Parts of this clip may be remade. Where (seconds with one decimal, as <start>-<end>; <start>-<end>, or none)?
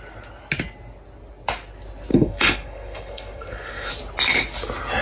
2.1-3.9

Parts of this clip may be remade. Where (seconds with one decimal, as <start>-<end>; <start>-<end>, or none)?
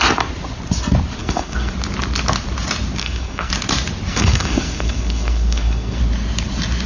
1.2-1.7; 3.0-3.5; 4.1-6.0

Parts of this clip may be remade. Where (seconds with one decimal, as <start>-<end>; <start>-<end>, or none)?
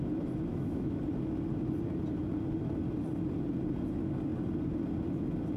0.5-1.0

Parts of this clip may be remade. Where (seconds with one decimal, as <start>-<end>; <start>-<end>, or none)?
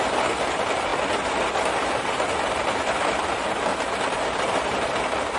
none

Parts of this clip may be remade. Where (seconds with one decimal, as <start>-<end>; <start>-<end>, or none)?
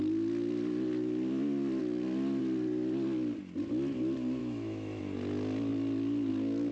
4.4-5.0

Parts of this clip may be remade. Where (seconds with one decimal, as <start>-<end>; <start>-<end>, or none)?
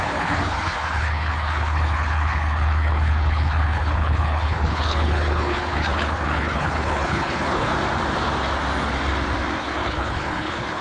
0.0-7.7; 9.6-10.8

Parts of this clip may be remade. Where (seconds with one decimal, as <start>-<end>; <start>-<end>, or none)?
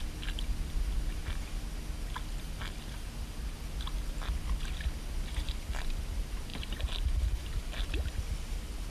6.5-7.4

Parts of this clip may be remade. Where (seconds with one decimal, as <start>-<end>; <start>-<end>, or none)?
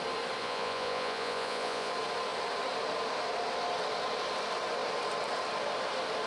0.4-1.9